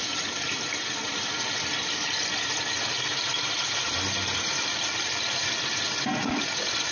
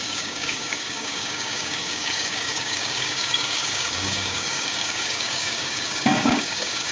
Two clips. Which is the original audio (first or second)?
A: first